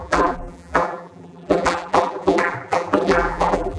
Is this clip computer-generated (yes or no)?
yes